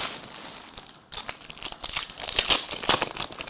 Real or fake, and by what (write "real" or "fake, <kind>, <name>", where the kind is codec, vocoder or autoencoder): real